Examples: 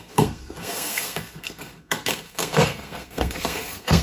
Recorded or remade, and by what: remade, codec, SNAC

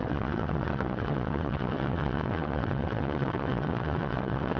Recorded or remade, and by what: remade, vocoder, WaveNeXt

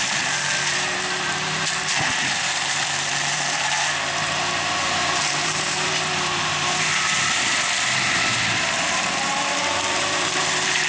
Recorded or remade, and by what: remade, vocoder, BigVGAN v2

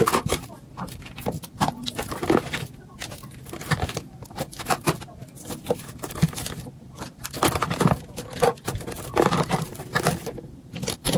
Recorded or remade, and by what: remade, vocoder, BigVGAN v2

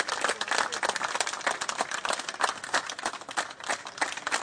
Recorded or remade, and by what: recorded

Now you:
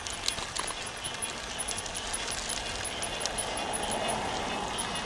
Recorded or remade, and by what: recorded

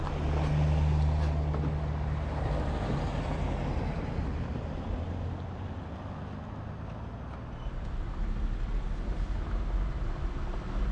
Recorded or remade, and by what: recorded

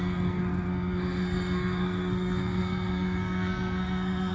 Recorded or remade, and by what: remade, codec, SNAC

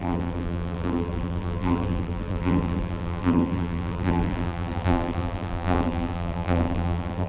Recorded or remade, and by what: remade, vocoder, BigVGAN v2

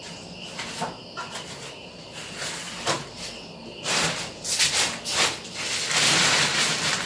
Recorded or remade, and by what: recorded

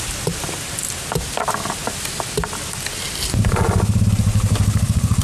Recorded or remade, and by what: recorded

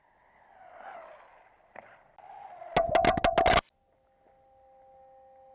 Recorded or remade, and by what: recorded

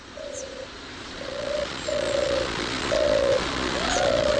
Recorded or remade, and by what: remade, vocoder, Vocos